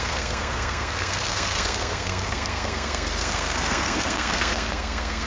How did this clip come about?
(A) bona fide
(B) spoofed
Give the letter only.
B